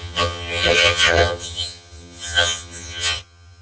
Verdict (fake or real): fake